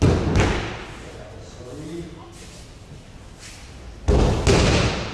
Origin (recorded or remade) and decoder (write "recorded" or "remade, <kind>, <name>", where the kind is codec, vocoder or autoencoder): recorded